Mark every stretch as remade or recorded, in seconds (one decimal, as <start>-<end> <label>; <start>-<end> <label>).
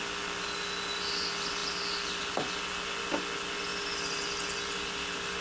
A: 0.0-5.4 recorded